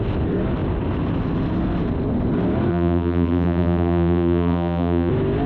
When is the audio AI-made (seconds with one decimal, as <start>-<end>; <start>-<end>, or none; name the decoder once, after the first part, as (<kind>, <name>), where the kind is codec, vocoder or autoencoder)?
2.7-5.1 (vocoder, BigVGAN v2)